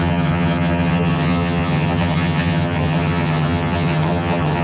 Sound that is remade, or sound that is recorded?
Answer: remade